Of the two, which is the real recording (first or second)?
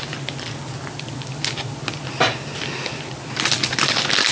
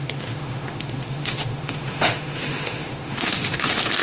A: first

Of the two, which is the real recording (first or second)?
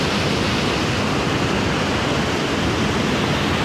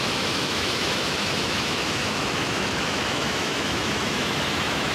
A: first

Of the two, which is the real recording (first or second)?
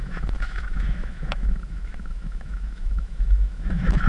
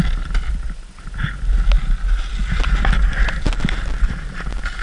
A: second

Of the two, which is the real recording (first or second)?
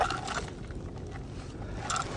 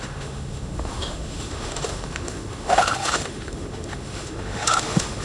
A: first